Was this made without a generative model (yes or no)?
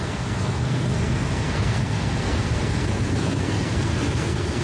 no